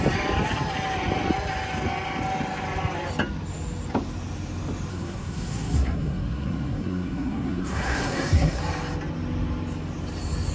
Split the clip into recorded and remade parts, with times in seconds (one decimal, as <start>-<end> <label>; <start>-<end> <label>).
0.0-4.9 recorded; 4.9-8.6 remade; 8.6-10.5 recorded